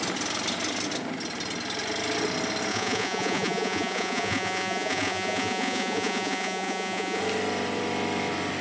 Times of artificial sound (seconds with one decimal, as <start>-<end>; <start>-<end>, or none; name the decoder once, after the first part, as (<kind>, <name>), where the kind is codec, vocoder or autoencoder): 2.7-7.2 (vocoder, Vocos)